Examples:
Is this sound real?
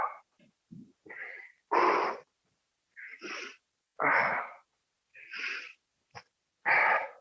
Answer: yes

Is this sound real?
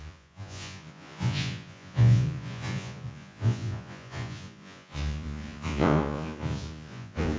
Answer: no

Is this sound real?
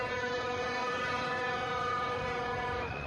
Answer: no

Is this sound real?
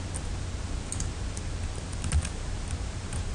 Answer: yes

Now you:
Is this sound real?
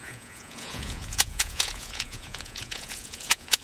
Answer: no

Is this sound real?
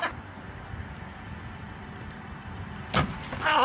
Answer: yes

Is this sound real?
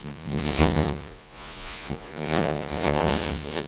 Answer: no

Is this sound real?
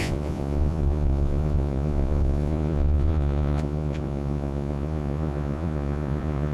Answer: no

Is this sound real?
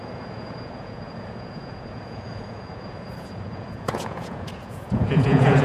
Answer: no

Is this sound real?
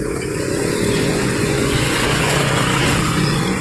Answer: no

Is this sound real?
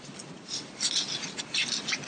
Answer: yes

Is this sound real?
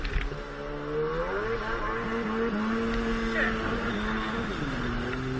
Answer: yes